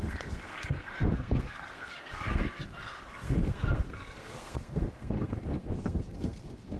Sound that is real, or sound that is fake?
fake